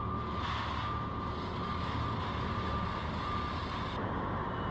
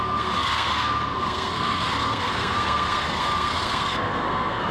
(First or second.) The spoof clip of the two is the second